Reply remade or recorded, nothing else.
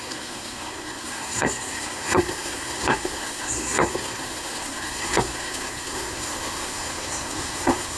remade